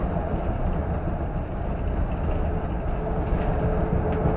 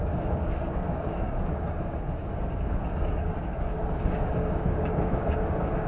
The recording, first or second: first